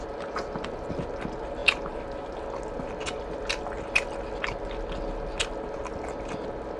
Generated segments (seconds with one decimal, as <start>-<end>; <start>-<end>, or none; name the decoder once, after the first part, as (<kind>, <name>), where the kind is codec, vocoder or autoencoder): none